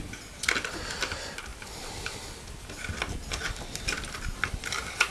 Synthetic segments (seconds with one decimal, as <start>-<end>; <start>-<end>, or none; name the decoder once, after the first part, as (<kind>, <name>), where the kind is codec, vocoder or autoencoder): 1.5-4.6 (vocoder, BigVGAN v2)